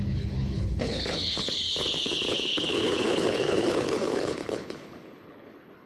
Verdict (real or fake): fake